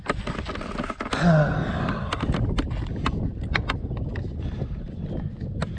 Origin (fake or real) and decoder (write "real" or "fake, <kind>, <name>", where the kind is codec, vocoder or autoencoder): real